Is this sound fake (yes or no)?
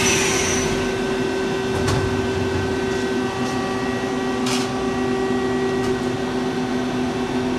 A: no